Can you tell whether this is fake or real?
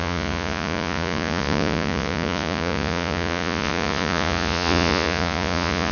fake